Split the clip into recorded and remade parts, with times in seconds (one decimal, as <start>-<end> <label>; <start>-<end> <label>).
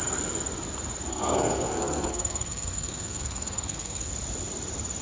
0.0-1.1 recorded; 1.1-4.1 remade; 4.1-5.0 recorded